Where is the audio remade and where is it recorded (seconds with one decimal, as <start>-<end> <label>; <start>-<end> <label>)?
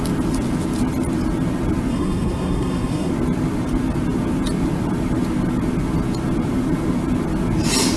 0.0-1.9 recorded; 1.9-3.1 remade; 3.1-8.0 recorded